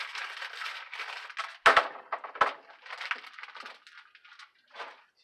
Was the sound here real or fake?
real